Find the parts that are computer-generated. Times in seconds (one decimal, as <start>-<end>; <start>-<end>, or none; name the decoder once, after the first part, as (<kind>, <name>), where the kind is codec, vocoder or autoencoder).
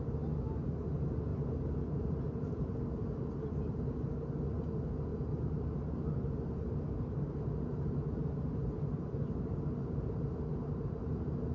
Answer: 1.3-2.3 (vocoder, BigVGAN v2)